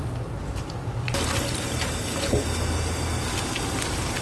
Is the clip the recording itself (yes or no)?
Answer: yes